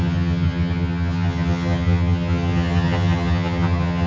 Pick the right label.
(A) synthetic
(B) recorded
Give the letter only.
A